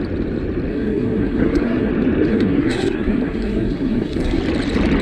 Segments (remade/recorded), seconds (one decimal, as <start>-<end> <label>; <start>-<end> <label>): 0.0-0.7 recorded; 0.7-1.9 remade; 1.9-2.3 recorded; 2.3-4.4 remade; 4.4-5.0 recorded